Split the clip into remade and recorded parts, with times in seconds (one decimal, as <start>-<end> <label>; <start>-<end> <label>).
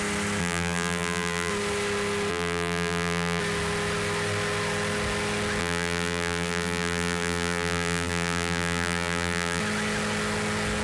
0.0-0.4 recorded; 0.4-1.5 remade; 1.5-2.3 recorded; 2.3-3.4 remade; 3.4-5.6 recorded; 5.6-9.6 remade; 9.6-10.8 recorded